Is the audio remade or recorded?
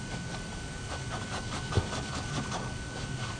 remade